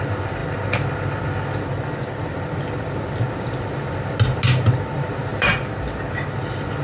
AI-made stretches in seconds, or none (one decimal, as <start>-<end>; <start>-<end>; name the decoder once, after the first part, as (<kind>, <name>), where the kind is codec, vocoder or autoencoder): 5.3-5.8 (vocoder, BigVGAN v2)